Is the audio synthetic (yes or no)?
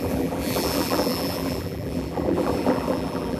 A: yes